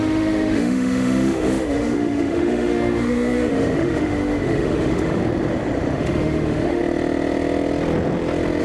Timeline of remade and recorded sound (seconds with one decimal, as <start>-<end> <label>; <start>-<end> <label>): 0.0-5.2 remade; 5.2-5.9 recorded; 5.9-6.8 remade; 6.8-8.6 recorded